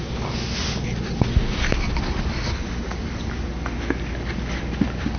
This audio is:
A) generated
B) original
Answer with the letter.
B